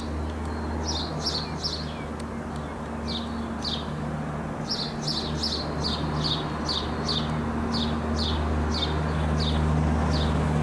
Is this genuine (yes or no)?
yes